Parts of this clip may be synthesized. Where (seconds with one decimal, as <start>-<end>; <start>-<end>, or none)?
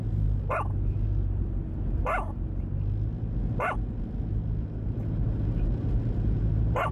4.6-6.9